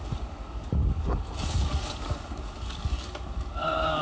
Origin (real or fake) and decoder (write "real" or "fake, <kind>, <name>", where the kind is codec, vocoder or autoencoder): fake, codec, DAC